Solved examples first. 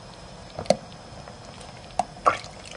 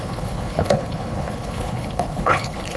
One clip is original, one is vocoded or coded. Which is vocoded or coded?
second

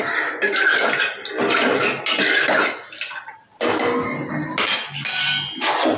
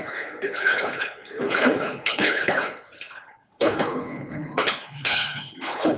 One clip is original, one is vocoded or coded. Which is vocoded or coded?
second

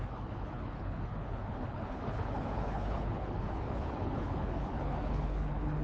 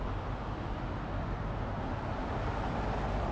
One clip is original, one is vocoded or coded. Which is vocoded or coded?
first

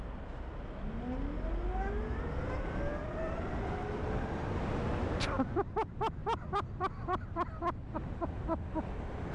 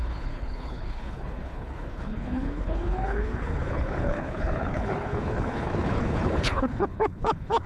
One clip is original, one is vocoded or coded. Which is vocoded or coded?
second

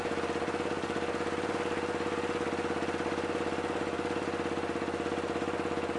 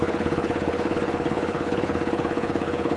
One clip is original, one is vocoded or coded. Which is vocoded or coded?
second